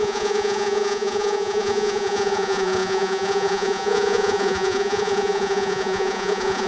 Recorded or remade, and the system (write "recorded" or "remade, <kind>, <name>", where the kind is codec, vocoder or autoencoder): remade, vocoder, Vocos